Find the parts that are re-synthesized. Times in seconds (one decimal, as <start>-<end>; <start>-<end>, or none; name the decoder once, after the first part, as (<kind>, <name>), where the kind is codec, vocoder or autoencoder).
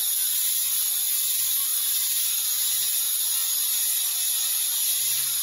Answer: 1.7-2.3 (vocoder, BigVGAN v2); 3.4-5.4